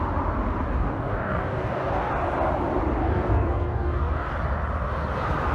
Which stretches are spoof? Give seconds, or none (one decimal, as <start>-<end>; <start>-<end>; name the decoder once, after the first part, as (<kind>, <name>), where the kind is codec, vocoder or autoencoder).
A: 0.7-2.1 (codec, DAC); 3.0-4.3